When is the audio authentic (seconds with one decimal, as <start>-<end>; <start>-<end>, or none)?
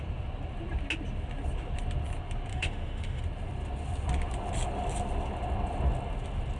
0.0-2.5; 3.2-6.6